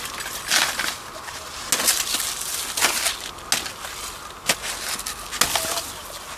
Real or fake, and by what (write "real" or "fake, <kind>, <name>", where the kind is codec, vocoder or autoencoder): real